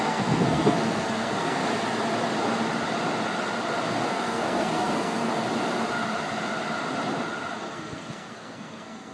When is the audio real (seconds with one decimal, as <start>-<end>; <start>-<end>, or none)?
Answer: 1.6-4.1; 5.3-7.6